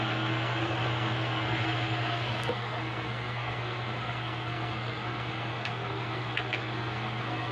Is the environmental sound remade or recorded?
remade